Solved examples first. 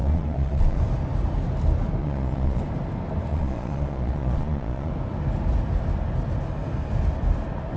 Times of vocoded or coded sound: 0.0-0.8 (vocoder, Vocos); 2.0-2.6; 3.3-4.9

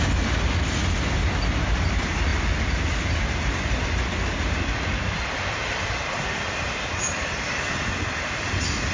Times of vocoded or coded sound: none

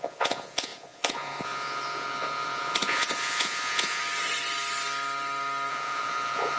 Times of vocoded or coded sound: 0.0-4.0 (vocoder, Vocos); 5.7-6.6

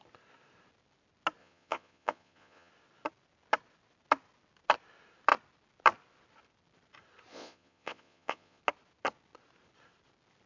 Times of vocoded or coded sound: 1.4-2.7 (vocoder, Vocos); 7.3-8.6